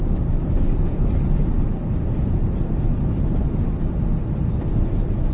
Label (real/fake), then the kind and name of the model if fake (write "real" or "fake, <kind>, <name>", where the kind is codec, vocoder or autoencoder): fake, vocoder, BigVGAN v2